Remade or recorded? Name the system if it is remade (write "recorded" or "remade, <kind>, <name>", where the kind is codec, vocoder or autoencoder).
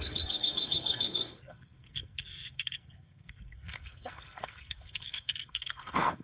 remade, codec, SNAC